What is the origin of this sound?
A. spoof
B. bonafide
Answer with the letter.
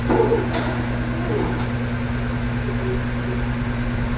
B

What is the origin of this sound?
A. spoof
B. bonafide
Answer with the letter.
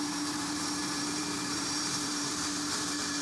A